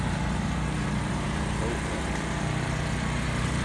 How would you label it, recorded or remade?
remade